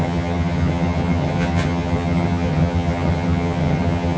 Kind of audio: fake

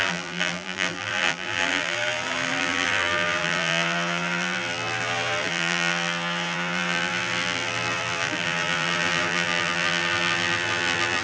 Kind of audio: fake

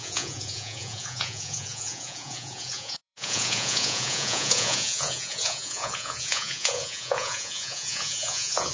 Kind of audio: fake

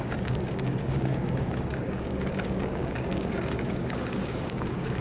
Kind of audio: fake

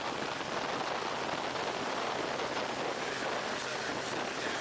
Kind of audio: real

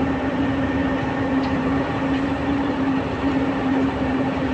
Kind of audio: fake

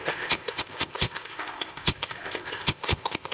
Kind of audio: fake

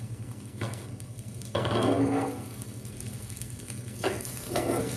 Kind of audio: fake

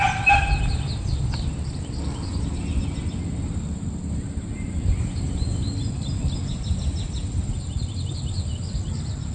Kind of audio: real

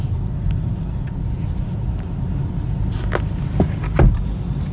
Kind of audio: real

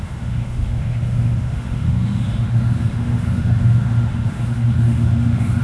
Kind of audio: fake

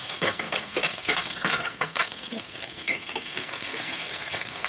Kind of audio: fake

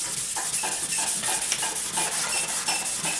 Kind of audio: real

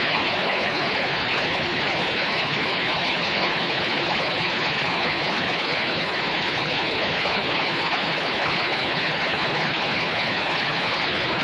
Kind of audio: fake